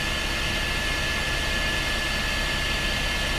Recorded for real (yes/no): yes